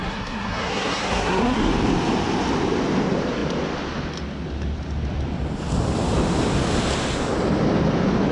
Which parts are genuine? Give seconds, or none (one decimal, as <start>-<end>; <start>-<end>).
1.7-8.3